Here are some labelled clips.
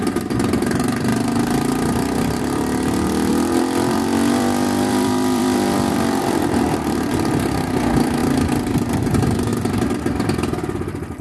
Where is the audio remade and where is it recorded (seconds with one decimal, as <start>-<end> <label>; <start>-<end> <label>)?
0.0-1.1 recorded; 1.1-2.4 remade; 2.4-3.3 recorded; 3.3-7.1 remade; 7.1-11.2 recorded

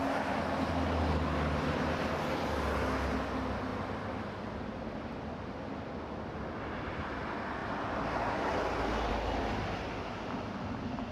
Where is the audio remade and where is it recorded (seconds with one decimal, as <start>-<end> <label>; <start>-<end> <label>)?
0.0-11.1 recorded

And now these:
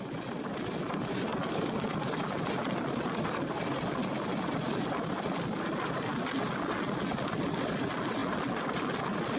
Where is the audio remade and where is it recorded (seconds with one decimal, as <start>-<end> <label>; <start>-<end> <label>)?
0.0-9.4 recorded

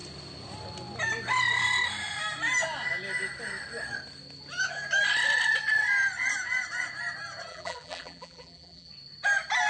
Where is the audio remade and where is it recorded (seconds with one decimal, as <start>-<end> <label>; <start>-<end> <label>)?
0.0-7.5 recorded; 7.5-8.9 remade; 8.9-9.7 recorded

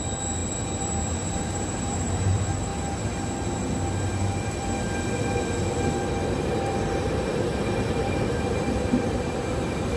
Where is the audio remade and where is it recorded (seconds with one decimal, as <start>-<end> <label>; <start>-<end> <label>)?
0.0-2.7 remade; 2.7-6.3 recorded; 6.3-10.0 remade

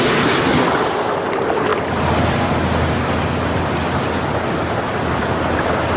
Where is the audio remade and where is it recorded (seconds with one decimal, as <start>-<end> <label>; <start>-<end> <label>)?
0.0-6.0 recorded